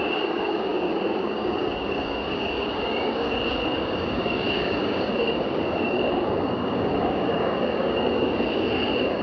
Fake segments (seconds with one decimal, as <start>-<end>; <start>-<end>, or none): 0.0-9.2